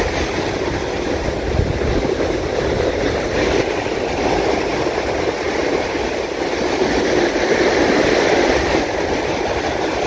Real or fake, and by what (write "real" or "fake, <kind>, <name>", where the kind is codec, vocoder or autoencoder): real